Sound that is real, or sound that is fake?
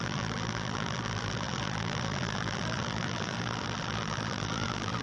fake